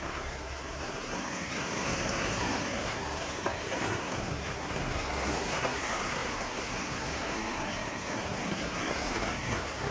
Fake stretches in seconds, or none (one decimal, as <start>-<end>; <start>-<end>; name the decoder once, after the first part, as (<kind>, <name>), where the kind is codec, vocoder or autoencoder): 0.0-9.9 (codec, SNAC)